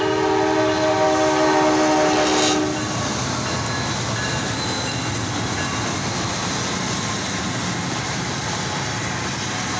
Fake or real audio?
real